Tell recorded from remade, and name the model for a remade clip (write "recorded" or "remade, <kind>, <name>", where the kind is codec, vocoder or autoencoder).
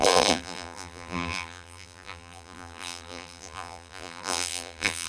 remade, vocoder, BigVGAN v2